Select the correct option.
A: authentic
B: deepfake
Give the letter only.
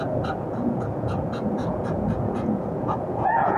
B